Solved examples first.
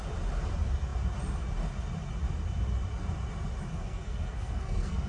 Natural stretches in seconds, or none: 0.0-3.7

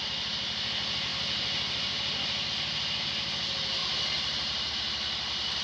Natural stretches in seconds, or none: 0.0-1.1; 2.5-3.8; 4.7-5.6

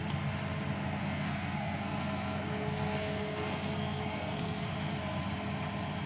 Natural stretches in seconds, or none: 0.0-1.0; 4.7-6.1